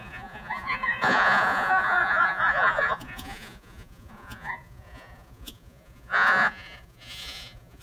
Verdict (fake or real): fake